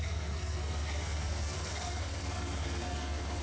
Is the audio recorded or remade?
remade